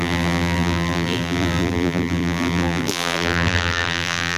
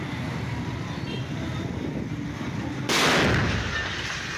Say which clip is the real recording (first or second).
second